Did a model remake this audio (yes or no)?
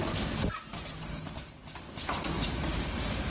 no